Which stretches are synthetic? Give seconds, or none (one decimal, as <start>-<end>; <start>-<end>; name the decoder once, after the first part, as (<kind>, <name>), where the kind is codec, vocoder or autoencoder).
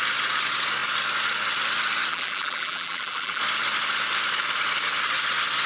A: 2.1-3.4 (vocoder, BigVGAN v2)